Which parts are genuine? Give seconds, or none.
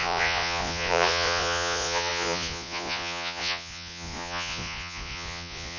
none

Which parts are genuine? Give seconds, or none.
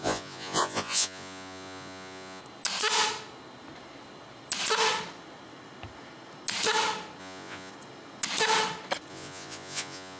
2.4-7.2; 7.7-9.1